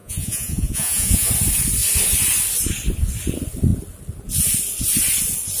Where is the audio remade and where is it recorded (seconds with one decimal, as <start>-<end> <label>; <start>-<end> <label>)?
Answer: 0.0-1.3 remade; 1.3-5.6 recorded